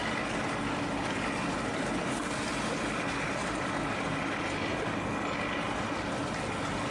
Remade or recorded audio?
recorded